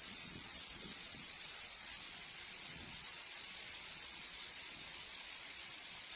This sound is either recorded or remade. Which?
remade